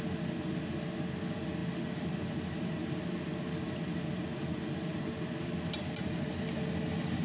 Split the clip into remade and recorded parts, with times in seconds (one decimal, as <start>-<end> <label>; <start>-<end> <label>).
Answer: 0.0-7.2 recorded